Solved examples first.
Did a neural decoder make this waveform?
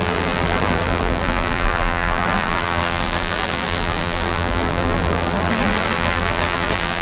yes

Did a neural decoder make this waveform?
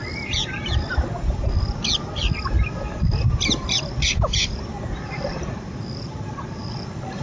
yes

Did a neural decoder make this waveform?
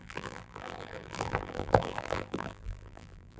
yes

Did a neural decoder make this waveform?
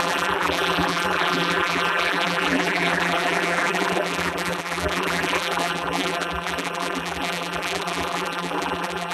yes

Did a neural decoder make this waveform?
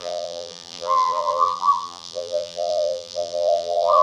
yes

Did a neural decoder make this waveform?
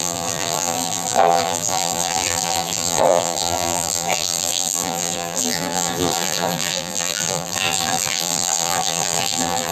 yes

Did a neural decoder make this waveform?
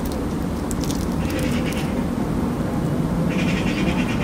no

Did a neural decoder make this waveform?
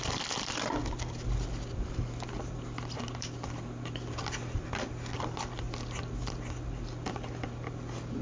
no